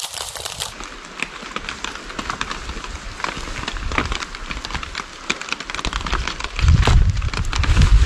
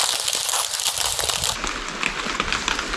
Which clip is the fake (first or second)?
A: first